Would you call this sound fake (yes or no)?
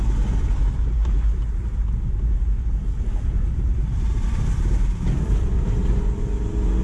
no